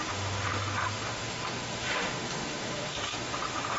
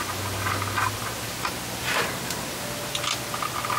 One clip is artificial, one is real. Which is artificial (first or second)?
first